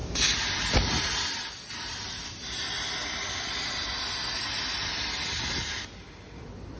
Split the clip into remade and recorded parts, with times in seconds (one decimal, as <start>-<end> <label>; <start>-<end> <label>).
0.0-4.1 remade; 4.1-6.8 recorded